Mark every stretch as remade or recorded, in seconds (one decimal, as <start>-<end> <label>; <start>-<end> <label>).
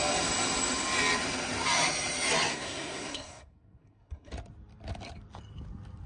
0.0-2.5 recorded; 2.5-4.3 remade; 4.3-6.1 recorded